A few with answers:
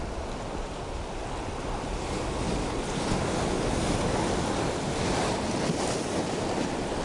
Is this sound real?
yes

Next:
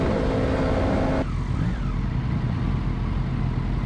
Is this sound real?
yes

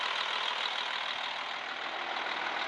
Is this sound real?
yes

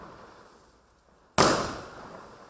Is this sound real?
yes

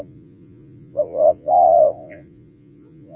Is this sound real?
no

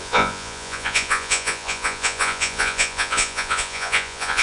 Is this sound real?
no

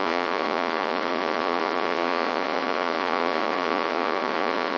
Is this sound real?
no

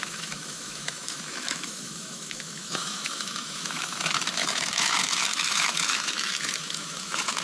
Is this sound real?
no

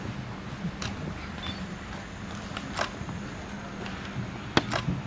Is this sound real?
yes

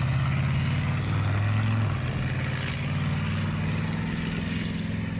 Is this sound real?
yes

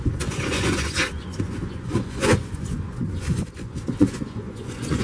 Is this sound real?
no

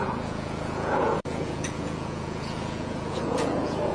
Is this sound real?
no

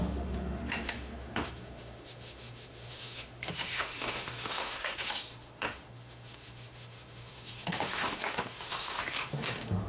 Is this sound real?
no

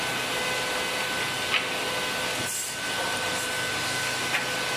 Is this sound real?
yes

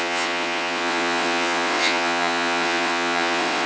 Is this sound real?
no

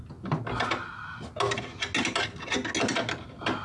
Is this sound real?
yes